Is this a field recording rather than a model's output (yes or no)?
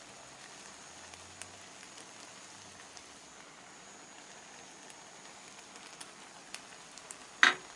yes